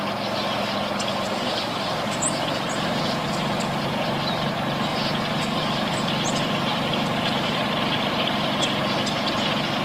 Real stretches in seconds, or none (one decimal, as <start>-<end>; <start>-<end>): 0.0-1.1; 3.8-4.9; 6.1-6.7; 7.7-9.8